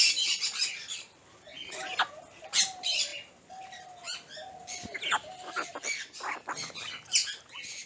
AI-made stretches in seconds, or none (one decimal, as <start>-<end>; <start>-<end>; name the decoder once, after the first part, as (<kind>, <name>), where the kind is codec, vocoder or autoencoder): none